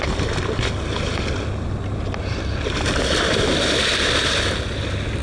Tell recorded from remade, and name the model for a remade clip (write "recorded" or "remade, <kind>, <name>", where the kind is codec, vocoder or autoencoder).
recorded